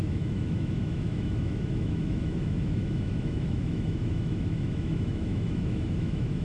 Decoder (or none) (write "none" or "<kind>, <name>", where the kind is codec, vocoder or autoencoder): autoencoder, DAC-VAE